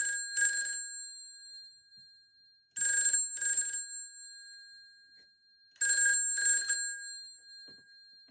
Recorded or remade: recorded